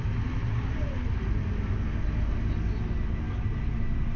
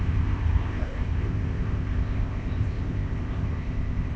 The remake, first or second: second